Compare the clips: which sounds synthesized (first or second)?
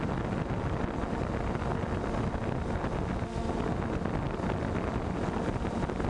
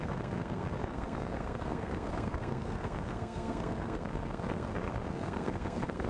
second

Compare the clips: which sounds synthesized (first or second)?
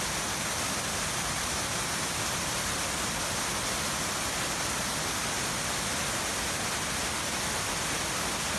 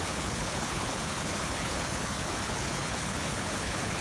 second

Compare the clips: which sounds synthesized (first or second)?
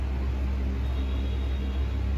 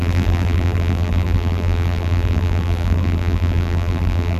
second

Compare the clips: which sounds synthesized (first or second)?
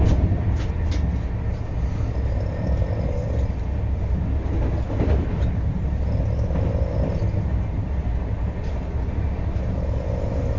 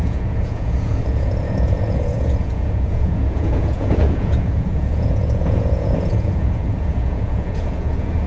second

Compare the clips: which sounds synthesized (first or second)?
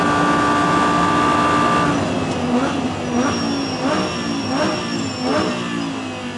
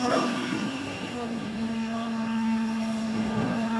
second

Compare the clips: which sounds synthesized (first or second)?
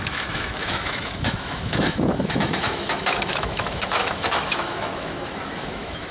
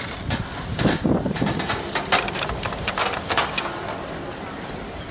first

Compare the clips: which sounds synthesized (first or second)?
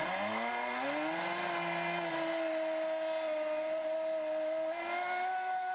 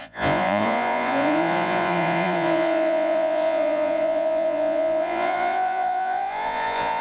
second